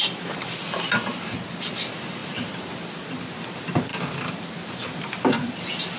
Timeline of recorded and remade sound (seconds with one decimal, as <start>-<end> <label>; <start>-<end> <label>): 0.0-2.2 recorded; 2.2-2.7 remade; 2.7-6.0 recorded